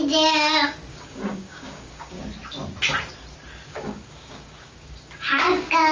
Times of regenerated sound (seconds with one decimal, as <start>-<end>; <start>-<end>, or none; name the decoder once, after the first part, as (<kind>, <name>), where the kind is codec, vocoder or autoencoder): 0.9-2.2 (codec, DAC); 3.7-5.9